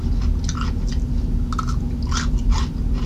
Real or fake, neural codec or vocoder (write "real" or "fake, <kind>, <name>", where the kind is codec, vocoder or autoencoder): real